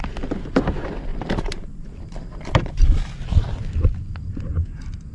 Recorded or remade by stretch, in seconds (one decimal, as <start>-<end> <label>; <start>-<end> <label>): 0.0-1.1 recorded; 1.1-3.7 remade; 3.7-5.1 recorded